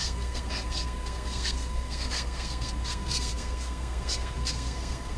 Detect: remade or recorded remade